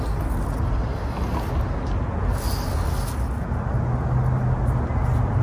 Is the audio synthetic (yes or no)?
no